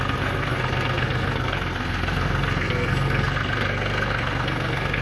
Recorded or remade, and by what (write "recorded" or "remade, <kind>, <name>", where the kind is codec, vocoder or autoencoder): remade, codec, SNAC